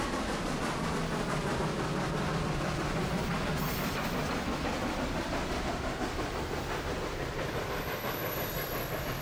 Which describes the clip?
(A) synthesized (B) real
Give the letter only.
B